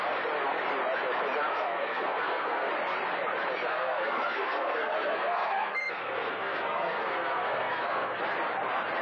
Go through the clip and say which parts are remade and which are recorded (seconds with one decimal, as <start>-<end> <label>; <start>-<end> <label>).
0.0-1.5 recorded; 1.5-2.7 remade; 2.7-3.7 recorded; 3.7-8.2 remade; 8.2-9.0 recorded